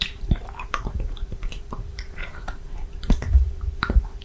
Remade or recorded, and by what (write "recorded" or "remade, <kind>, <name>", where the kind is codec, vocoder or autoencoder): remade, vocoder, BigVGAN v2